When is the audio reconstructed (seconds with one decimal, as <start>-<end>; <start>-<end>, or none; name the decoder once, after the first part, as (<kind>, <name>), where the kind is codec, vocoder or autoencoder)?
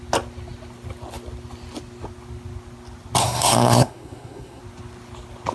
3.2-4.6 (codec, SNAC)